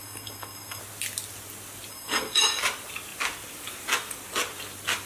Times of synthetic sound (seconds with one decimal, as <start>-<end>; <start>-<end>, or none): 0.0-0.8; 1.9-2.4